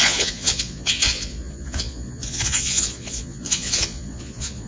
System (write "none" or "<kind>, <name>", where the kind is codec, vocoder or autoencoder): vocoder, Vocos